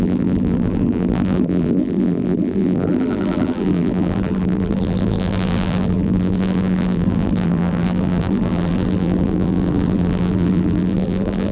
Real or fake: fake